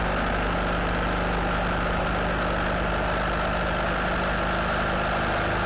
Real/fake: real